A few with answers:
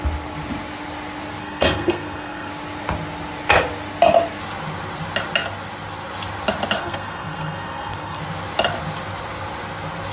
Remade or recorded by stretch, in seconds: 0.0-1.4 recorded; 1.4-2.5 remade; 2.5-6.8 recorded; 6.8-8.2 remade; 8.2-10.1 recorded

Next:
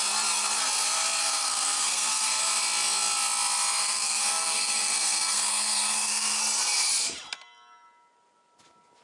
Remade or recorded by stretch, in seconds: 0.0-1.2 recorded; 1.2-2.4 remade; 2.4-3.8 recorded; 3.8-6.4 remade; 6.4-9.0 recorded

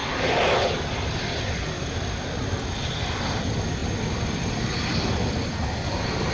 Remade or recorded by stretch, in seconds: 0.0-6.3 recorded

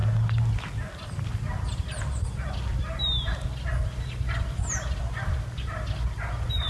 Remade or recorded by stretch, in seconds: 0.0-6.7 recorded

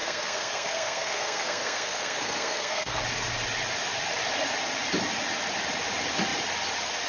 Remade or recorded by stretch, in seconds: 0.0-3.0 remade; 3.0-7.1 recorded

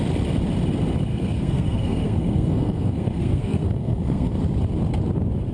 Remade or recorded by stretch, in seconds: 0.0-1.1 recorded; 1.1-4.4 remade; 4.4-5.5 recorded

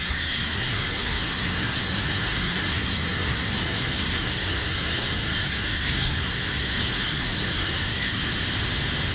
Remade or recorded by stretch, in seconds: 0.0-8.2 remade; 8.2-9.1 recorded